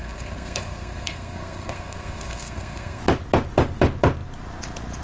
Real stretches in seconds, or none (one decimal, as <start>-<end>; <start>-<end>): 3.0-5.0